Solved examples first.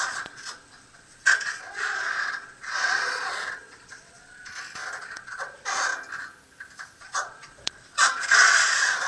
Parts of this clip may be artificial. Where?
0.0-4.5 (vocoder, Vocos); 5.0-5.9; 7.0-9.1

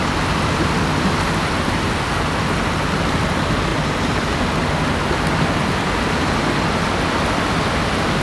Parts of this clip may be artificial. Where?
none

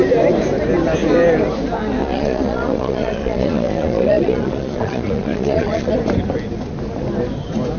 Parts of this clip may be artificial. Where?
2.0-5.9 (vocoder, Vocos)

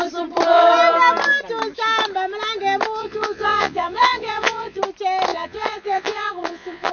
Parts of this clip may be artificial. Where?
3.0-4.8 (vocoder, Vocos); 5.3-6.9

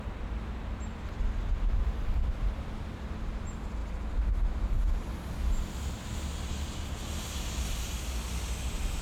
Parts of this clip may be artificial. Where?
none

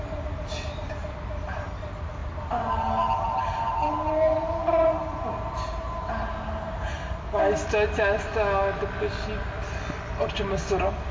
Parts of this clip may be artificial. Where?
none

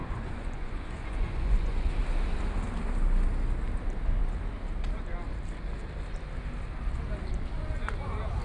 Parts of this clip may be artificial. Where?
0.0-1.9 (vocoder, Vocos)